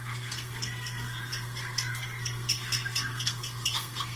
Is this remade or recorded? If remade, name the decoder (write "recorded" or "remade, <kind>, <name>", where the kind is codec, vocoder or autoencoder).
remade, codec, SNAC